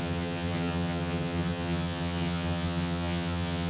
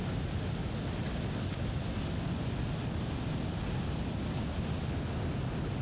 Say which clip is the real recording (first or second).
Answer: second